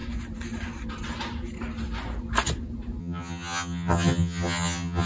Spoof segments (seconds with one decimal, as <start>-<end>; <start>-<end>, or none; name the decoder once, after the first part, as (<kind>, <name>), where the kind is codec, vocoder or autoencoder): 3.0-5.0 (vocoder, HiFi-GAN)